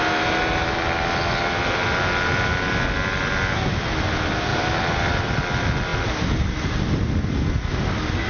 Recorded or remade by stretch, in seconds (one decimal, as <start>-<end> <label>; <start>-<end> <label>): 0.0-8.3 recorded